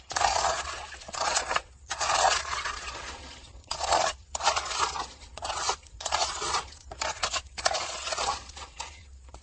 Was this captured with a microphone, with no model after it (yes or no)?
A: no